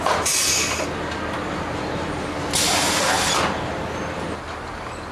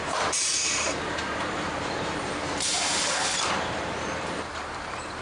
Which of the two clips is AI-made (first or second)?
second